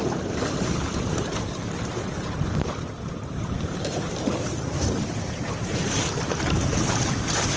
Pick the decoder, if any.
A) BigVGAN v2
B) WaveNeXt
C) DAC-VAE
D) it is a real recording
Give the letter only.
A